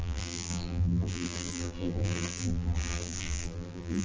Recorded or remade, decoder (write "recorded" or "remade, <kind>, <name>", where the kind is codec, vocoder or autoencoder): remade, vocoder, BigVGAN v2